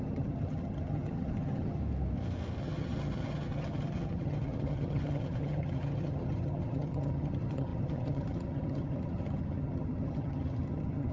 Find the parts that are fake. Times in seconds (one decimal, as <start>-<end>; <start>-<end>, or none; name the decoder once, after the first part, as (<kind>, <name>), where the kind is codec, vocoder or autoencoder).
0.0-1.8 (vocoder, HiFi-GAN); 2.6-11.1